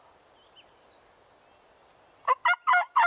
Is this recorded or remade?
recorded